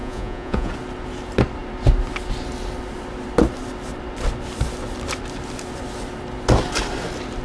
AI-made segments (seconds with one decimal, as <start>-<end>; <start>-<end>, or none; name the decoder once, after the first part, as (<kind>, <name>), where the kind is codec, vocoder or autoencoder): 0.0-0.7 (vocoder, Vocos)